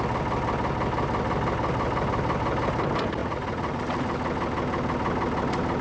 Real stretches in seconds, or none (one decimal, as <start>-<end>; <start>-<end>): 0.0-3.2; 3.8-5.8